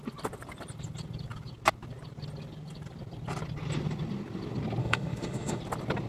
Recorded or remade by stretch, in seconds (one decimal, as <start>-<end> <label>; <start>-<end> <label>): 0.0-4.8 recorded; 4.8-5.6 remade; 5.6-6.1 recorded